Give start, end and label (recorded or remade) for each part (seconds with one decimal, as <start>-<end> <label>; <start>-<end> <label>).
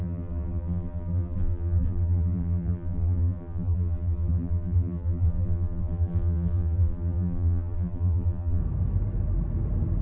0.0-8.6 remade; 8.6-10.0 recorded